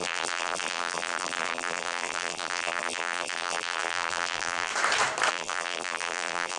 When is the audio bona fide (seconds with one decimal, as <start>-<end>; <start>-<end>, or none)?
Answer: 4.7-5.3